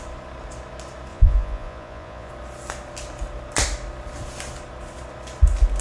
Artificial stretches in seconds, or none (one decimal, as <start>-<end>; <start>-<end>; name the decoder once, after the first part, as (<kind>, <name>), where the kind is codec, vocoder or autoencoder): 1.1-2.3 (vocoder, Vocos)